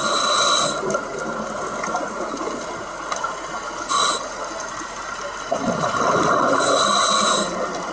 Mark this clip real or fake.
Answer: real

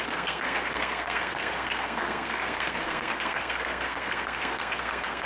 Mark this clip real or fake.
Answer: fake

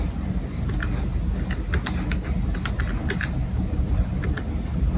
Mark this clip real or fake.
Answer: real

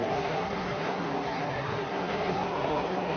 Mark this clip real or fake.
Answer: fake